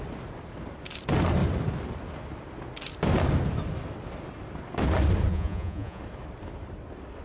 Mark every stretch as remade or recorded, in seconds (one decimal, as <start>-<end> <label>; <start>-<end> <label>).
0.0-5.3 recorded; 5.3-6.0 remade; 6.0-7.2 recorded